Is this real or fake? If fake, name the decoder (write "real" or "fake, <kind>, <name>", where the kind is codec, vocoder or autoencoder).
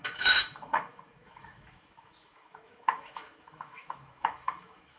fake, autoencoder, DAC-VAE